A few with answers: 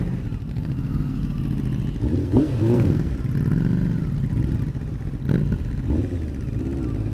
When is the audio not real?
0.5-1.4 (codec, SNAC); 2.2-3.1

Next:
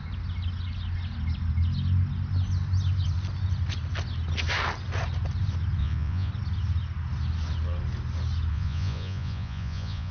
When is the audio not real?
5.8-6.3 (vocoder, Vocos); 8.5-10.1

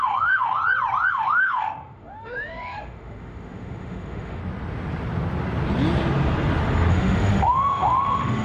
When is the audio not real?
0.0-0.6 (autoencoder, DAC-VAE); 1.1-4.4; 6.9-8.4

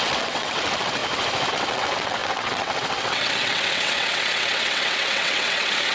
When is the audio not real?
0.0-1.0 (vocoder, WaveNeXt); 1.5-5.9